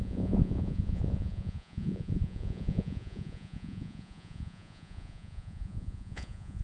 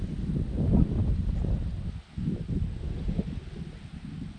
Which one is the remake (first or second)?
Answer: first